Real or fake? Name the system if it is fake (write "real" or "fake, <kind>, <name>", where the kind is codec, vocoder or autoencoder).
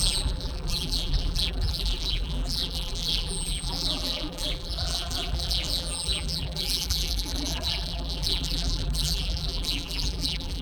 fake, vocoder, BigVGAN v2